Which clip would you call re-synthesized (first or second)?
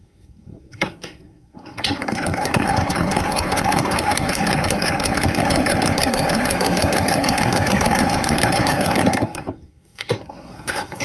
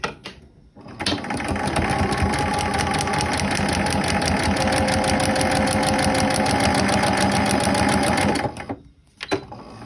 first